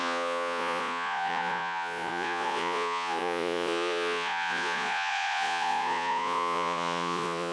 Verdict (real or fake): fake